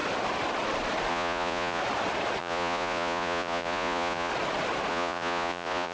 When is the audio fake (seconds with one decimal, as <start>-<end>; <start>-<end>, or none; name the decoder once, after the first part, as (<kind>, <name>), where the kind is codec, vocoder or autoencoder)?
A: 1.1-1.8 (vocoder, Vocos); 2.4-4.3; 4.9-5.9